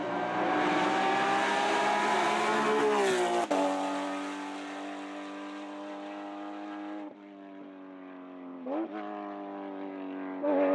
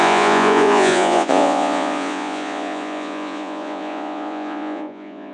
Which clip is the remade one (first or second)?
second